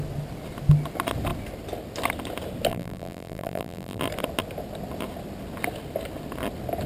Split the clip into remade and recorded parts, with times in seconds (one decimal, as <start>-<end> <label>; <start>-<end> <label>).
0.0-2.7 recorded; 2.7-4.0 remade; 4.0-6.9 recorded